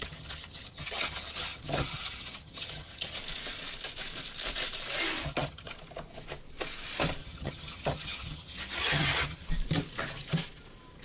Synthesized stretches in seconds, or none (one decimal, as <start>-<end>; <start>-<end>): 0.0-3.2; 5.2-5.7; 7.2-9.5